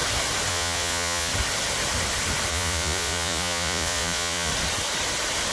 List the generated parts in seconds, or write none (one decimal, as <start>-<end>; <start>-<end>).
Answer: 0.5-1.3; 2.5-4.5